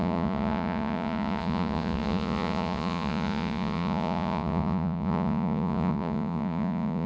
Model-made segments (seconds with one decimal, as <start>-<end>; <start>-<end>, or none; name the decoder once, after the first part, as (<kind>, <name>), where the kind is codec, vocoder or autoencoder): 0.0-7.1 (vocoder, Vocos)